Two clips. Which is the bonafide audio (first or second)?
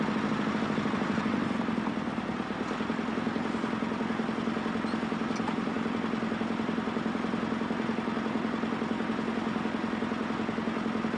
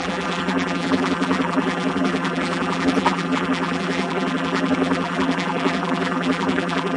first